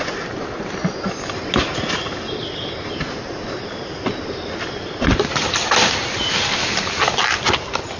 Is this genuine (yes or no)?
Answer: yes